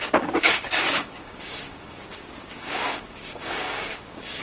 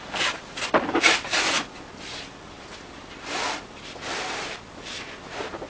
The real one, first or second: second